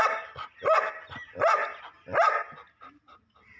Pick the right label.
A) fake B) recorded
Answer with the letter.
B